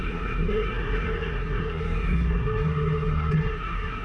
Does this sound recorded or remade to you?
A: remade